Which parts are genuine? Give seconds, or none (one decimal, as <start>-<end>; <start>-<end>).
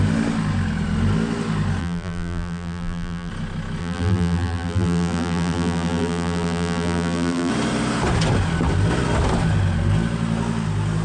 0.0-1.8; 3.3-3.8; 7.5-11.0